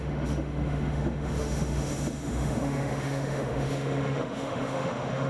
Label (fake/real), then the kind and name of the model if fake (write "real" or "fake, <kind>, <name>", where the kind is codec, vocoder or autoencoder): fake, autoencoder, DAC-VAE